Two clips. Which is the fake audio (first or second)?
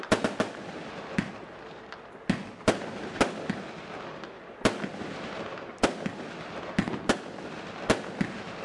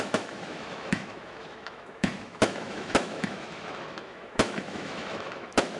second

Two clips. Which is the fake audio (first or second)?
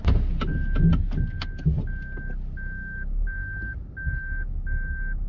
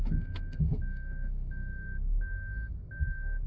second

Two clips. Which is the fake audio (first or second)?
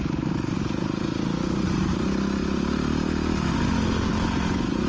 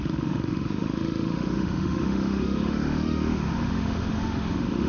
second